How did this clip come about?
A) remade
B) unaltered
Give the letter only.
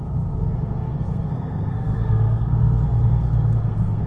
A